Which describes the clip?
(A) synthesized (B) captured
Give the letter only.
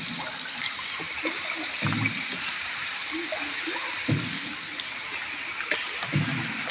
B